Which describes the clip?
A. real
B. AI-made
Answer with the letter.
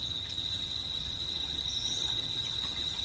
B